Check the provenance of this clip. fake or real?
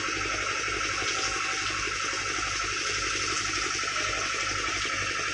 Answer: real